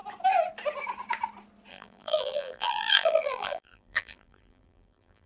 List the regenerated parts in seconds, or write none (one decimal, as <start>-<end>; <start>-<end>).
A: 1.7-5.3